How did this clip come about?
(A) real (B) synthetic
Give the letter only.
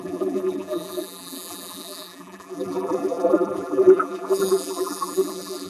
B